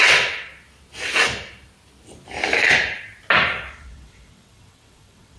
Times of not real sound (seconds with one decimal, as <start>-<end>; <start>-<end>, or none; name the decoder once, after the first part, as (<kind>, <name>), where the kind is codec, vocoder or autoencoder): 0.0-0.5 (vocoder, WaveNeXt); 3.7-5.4